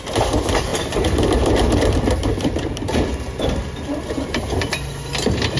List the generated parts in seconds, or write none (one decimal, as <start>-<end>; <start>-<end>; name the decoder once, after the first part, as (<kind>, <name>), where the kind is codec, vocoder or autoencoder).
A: 0.0-5.6 (vocoder, BigVGAN v2)

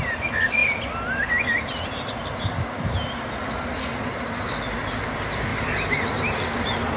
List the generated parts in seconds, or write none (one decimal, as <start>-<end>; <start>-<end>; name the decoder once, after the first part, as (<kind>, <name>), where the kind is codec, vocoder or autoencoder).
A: none